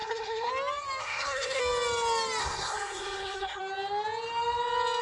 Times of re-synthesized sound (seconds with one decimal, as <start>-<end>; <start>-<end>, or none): 0.0-0.5; 1.0-1.6; 2.4-3.6